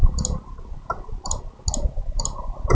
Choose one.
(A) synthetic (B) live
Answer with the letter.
B